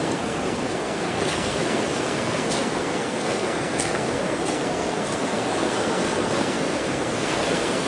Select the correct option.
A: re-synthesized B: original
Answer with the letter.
A